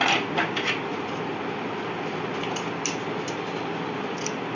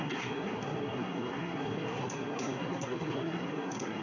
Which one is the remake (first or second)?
second